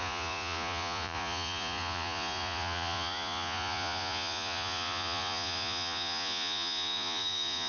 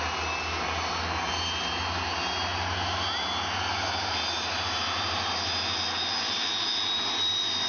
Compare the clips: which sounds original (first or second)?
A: second